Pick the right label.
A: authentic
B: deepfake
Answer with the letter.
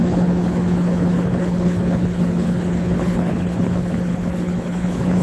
B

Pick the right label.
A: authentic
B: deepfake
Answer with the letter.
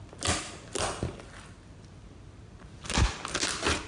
A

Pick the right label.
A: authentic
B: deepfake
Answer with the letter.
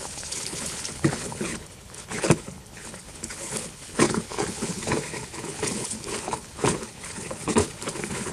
B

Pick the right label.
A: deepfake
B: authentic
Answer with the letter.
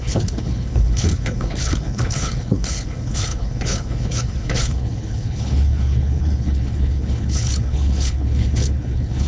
A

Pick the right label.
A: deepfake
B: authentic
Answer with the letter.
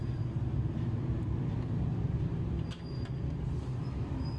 B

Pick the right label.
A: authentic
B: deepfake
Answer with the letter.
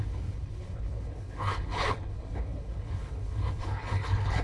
B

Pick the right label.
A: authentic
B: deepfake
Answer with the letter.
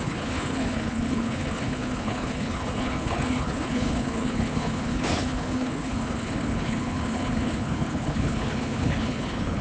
B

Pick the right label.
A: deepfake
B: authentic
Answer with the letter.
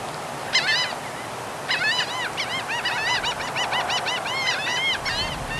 B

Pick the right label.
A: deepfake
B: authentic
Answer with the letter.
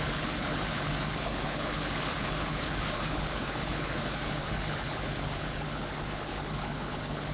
A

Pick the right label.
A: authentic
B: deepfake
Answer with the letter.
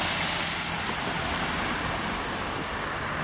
A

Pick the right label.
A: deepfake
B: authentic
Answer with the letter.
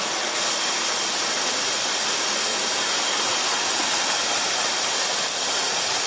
B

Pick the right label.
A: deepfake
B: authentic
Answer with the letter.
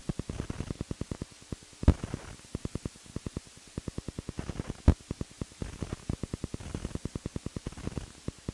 B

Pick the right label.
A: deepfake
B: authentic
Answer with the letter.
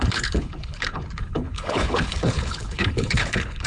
A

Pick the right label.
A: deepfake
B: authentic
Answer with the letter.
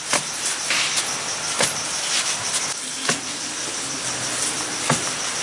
B